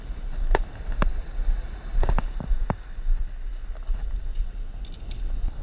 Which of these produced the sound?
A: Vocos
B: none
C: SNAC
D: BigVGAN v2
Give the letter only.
B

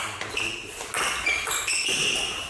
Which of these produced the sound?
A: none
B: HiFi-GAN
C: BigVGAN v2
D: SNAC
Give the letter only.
C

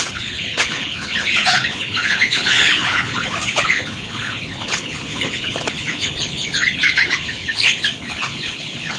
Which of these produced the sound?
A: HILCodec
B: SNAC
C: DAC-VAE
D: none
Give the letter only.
A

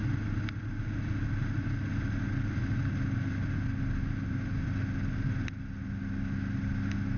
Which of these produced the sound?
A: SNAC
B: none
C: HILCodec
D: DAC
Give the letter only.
B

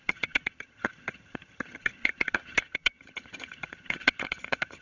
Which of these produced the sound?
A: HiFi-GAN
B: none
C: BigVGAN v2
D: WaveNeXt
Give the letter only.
A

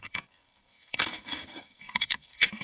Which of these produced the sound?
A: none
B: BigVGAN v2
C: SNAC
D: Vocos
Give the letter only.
C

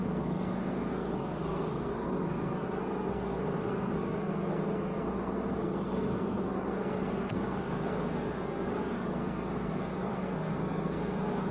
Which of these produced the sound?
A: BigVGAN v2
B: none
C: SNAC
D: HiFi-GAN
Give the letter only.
C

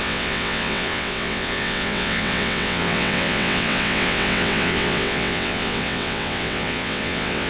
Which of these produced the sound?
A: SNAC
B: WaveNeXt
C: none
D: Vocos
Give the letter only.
B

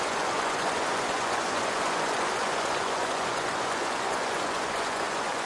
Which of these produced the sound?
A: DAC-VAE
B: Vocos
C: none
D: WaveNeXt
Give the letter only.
B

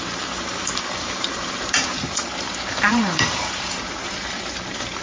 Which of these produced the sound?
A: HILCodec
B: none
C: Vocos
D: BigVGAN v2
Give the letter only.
D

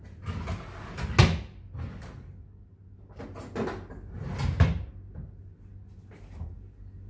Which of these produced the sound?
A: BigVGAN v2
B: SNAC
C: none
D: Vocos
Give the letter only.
C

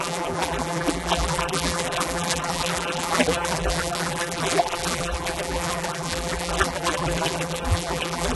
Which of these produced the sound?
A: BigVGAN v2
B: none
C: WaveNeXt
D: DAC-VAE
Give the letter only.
A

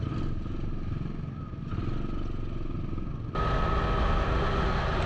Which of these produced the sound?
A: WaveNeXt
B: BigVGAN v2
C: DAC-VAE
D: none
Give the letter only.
D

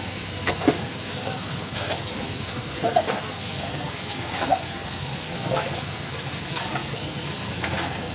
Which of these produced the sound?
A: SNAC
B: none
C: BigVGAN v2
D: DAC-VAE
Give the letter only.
A